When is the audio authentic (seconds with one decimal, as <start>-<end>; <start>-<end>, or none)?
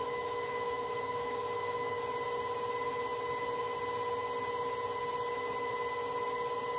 2.0-6.8